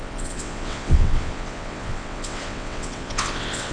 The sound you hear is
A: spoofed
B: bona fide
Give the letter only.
A